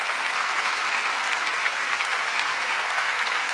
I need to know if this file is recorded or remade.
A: remade